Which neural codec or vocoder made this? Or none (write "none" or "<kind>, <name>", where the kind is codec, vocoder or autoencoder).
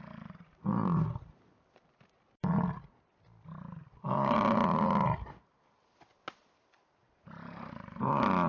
none